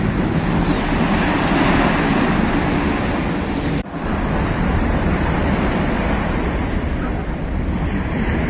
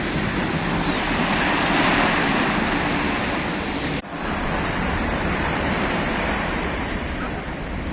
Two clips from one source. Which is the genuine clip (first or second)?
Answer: first